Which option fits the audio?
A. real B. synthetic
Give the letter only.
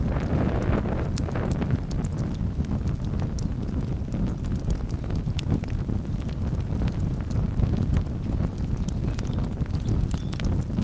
A